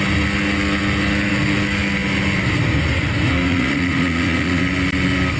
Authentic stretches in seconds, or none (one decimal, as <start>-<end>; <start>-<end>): 0.0-3.5; 4.6-5.4